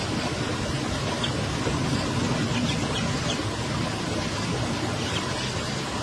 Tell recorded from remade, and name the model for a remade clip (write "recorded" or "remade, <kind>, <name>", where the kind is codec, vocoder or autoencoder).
recorded